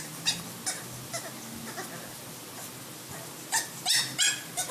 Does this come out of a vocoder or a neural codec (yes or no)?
no